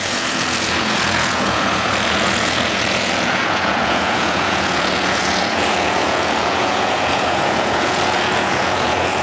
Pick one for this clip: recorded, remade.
remade